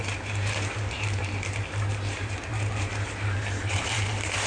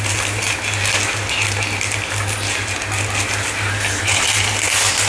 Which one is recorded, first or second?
second